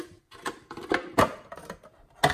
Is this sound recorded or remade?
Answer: recorded